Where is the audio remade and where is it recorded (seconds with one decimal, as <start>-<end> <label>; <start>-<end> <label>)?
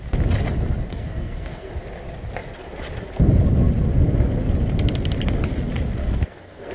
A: 0.0-0.9 recorded; 0.9-1.7 remade; 1.7-6.0 recorded; 6.0-6.7 remade